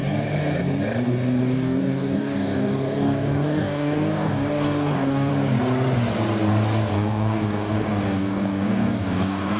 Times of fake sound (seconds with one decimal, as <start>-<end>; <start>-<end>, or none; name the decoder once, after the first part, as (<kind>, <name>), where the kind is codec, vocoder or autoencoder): 1.4-5.3 (codec, DAC); 6.9-9.6